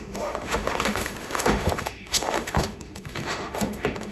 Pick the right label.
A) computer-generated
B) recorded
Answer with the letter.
A